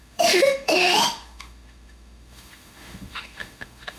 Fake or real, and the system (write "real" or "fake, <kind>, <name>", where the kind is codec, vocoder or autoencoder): fake, autoencoder, DAC-VAE